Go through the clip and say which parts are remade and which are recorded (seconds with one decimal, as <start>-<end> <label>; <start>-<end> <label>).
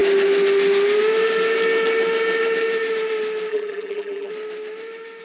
0.0-3.5 recorded; 3.5-4.3 remade; 4.3-5.2 recorded